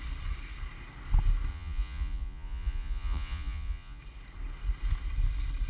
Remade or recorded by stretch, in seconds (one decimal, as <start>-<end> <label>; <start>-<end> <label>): 0.0-1.5 recorded; 1.5-4.0 remade; 4.0-5.7 recorded